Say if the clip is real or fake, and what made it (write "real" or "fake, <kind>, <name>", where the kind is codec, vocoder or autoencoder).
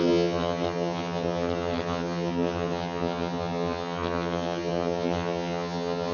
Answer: fake, vocoder, HiFi-GAN